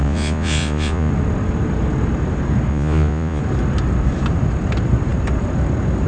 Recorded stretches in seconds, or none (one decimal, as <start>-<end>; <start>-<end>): 1.1-2.7; 3.4-6.1